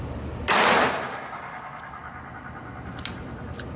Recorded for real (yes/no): yes